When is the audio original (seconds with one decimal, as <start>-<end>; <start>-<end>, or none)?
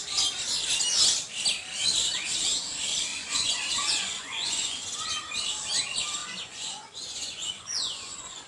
0.0-3.1; 5.1-6.2